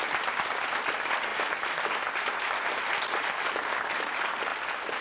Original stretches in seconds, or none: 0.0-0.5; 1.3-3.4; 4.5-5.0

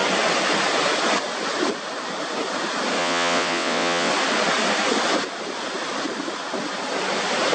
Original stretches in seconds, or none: 0.0-3.0; 4.1-7.5

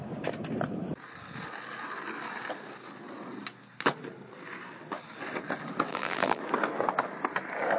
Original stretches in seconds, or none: 0.0-5.9; 6.4-7.8

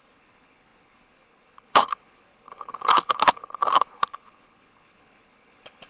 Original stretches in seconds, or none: none

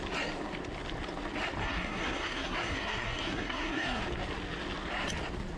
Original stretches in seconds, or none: 0.0-1.6; 4.0-5.6